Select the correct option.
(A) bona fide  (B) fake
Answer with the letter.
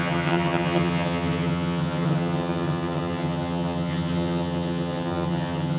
B